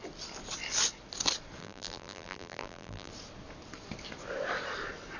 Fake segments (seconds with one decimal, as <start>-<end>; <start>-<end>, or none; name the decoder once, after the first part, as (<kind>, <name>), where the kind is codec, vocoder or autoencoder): 1.6-3.1 (vocoder, BigVGAN v2)